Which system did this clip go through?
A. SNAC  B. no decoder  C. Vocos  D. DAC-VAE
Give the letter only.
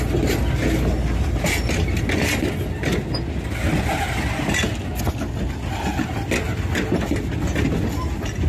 B